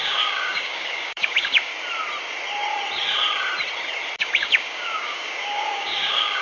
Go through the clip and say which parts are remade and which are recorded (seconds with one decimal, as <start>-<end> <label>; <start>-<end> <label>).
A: 0.0-1.7 remade; 1.7-4.2 recorded; 4.2-6.4 remade